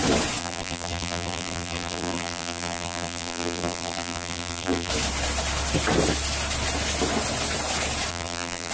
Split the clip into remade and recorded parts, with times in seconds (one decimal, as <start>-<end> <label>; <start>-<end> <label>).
0.0-0.4 recorded; 0.4-4.9 remade; 4.9-8.1 recorded; 8.1-8.7 remade